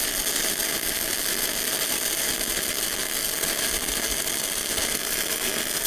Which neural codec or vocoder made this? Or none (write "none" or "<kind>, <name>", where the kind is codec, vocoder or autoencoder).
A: none